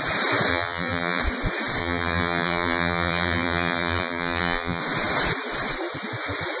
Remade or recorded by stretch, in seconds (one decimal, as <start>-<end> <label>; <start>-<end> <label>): 0.0-0.5 recorded; 0.5-1.2 remade; 1.2-1.8 recorded; 1.8-4.8 remade; 4.8-6.6 recorded